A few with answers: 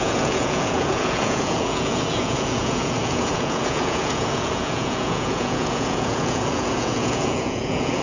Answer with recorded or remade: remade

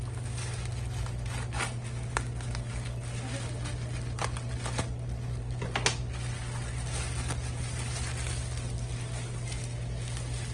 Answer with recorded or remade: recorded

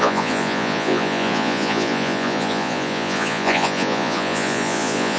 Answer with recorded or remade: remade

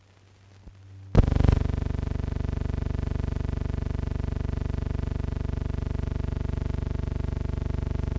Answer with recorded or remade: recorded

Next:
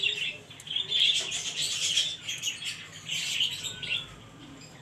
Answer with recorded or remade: recorded